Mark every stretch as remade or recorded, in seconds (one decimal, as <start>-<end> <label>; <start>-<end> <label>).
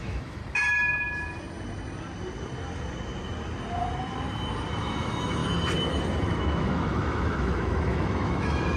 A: 0.0-0.4 remade; 0.4-4.7 recorded; 4.7-5.4 remade; 5.4-6.2 recorded; 6.2-8.8 remade